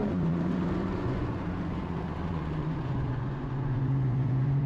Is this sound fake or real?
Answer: fake